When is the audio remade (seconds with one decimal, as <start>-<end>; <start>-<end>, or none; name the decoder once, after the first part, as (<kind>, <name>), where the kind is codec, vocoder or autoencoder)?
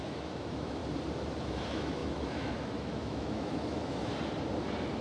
0.0-0.8 (autoencoder, DAC-VAE); 1.3-4.1